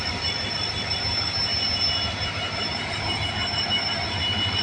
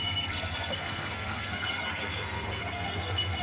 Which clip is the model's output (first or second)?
second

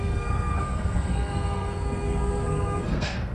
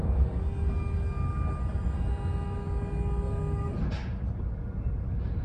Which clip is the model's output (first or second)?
first